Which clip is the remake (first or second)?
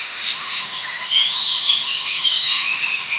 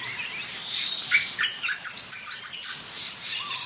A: first